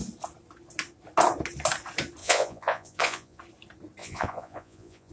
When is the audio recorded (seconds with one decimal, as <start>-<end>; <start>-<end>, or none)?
0.0-2.2; 3.4-4.0

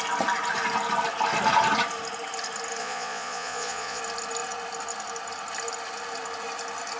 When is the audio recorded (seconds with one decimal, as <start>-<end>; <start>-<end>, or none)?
0.0-2.8; 4.0-7.0

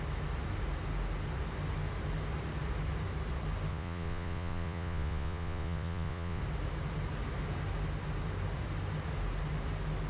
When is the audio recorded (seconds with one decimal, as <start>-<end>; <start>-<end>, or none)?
0.0-3.7; 6.4-10.1

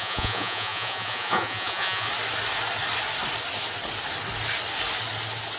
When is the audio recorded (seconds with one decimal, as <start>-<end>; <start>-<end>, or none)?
2.1-5.6

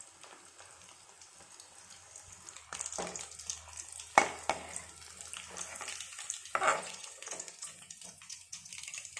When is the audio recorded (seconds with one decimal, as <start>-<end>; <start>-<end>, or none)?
0.0-6.7; 8.7-9.2

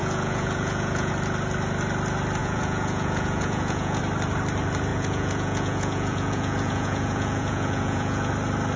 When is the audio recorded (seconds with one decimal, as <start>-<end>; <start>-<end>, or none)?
1.1-2.4; 4.0-4.9; 8.3-8.8

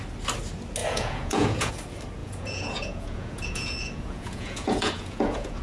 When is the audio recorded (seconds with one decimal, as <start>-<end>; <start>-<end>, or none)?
0.0-0.8; 1.7-2.2